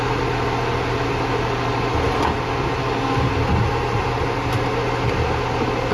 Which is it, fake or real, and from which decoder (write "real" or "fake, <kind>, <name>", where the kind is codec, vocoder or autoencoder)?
real